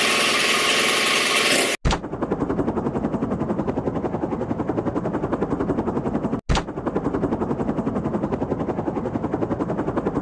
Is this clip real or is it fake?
real